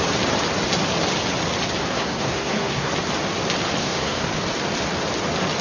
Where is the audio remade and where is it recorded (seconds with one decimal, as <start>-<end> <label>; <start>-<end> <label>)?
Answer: 0.0-1.8 recorded; 1.8-2.9 remade; 2.9-3.8 recorded; 3.8-4.3 remade; 4.3-5.6 recorded